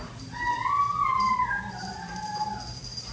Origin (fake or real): real